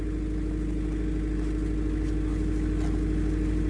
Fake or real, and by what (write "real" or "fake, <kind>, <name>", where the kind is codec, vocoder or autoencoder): real